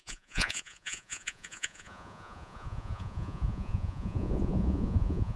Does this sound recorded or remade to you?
remade